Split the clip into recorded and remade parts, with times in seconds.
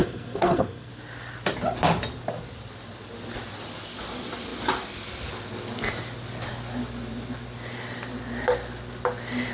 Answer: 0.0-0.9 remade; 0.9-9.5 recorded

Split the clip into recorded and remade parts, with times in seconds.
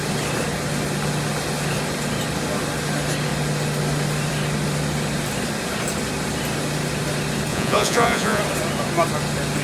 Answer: 0.0-7.5 recorded; 7.5-8.4 remade; 8.4-9.6 recorded